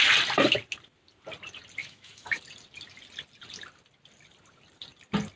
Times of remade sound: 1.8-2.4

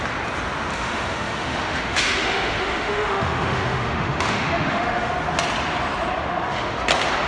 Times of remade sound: 0.7-5.1; 6.2-6.8

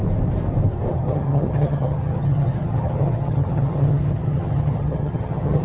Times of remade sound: 0.9-5.6

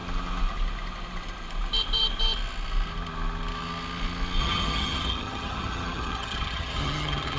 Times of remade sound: 4.4-7.4

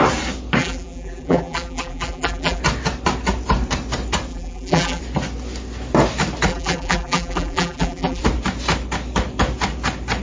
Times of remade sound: 0.6-2.6; 4.3-5.0; 6.5-8.2